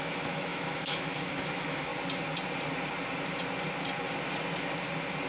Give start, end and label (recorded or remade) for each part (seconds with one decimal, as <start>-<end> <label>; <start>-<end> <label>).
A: 0.0-1.9 remade; 1.9-5.3 recorded